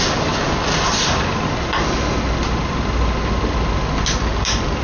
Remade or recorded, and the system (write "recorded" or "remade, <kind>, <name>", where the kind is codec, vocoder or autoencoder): recorded